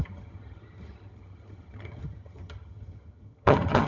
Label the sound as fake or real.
fake